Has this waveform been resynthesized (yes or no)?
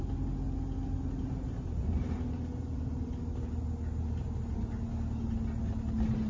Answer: no